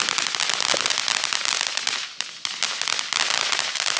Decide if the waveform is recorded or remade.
recorded